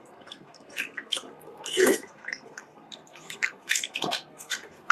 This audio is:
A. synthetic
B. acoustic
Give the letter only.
A